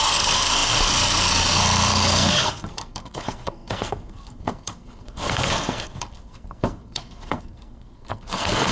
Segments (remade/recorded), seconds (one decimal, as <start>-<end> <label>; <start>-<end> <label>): 0.0-8.7 remade